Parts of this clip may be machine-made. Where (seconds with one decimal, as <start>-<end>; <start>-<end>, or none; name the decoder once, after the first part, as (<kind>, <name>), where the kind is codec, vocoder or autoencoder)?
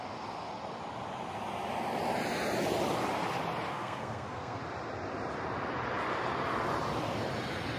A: 3.7-4.6 (codec, SNAC)